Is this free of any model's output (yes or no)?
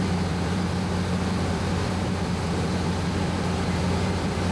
no